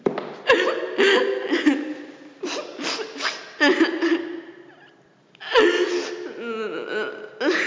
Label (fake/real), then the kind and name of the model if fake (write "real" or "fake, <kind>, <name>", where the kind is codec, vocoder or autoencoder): real